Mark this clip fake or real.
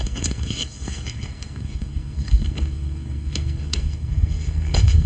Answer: fake